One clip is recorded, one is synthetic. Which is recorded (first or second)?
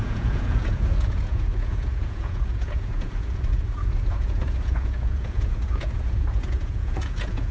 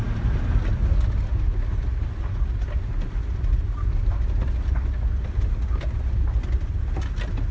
second